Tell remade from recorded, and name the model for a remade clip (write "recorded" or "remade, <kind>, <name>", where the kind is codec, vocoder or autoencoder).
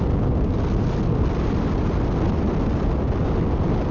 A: recorded